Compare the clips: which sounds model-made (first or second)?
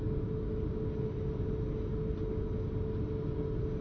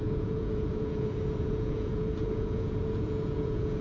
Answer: second